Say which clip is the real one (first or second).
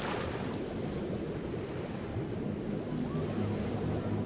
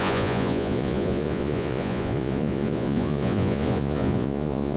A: first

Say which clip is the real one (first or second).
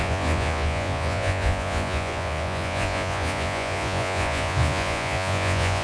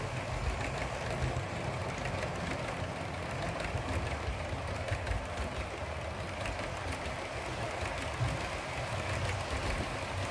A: second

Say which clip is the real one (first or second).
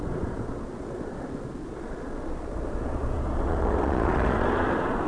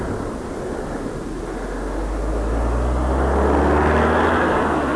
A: second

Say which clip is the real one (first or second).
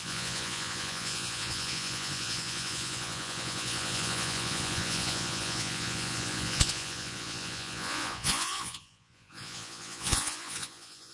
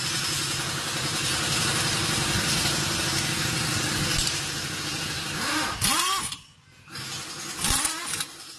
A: second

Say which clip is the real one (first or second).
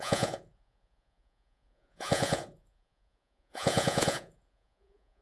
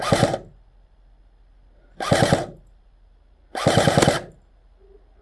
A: second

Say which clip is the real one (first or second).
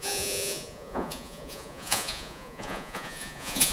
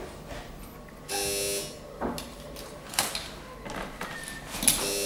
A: second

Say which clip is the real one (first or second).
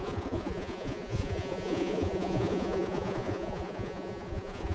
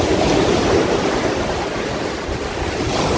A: second